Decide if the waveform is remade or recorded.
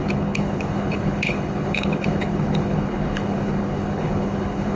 remade